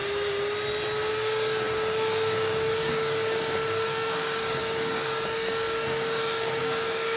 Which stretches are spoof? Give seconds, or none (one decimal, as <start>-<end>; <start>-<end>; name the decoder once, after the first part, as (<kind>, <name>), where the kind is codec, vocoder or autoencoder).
1.1-7.2 (codec, DAC)